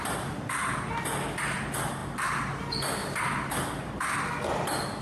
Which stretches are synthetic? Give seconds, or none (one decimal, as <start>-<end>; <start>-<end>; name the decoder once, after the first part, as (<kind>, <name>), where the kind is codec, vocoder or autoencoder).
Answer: 2.0-2.6 (vocoder, BigVGAN v2); 3.0-4.0